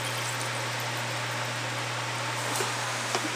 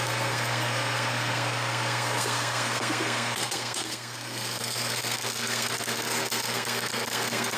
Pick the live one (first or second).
first